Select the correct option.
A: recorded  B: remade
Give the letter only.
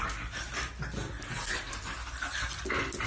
A